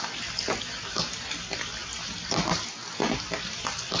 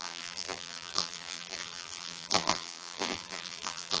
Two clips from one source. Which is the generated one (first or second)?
second